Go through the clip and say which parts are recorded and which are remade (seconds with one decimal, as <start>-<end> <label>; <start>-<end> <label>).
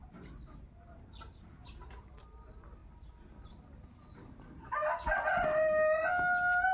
0.0-6.7 recorded